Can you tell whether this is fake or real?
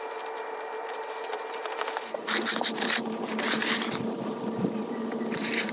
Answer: fake